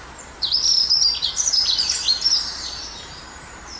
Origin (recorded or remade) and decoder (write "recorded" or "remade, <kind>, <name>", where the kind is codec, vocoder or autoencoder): remade, vocoder, BigVGAN v2